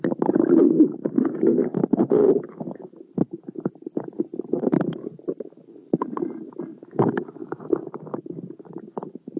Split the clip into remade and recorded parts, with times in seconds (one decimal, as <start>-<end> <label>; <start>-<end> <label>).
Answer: 0.0-7.4 recorded; 7.4-7.9 remade; 7.9-9.4 recorded